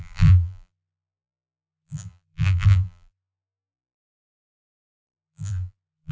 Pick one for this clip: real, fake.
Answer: fake